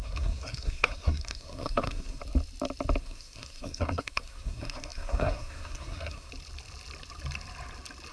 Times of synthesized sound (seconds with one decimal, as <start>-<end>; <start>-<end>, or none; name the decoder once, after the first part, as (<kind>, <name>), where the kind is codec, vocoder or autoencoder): 0.0-2.2 (codec, SNAC); 3.0-6.3